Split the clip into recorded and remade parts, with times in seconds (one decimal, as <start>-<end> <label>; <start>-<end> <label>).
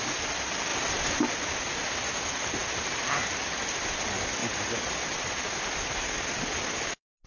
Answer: 0.0-0.7 recorded; 0.7-1.2 remade; 1.2-4.4 recorded; 4.4-4.9 remade; 4.9-7.3 recorded